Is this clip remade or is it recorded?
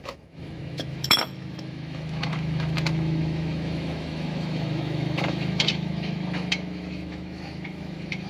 remade